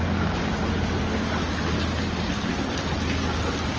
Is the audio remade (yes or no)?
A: no